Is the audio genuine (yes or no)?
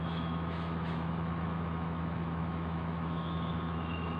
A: no